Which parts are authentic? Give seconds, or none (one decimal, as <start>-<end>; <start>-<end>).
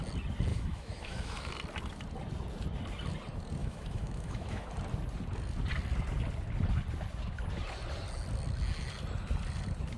0.0-0.5; 1.5-3.6; 4.7-10.0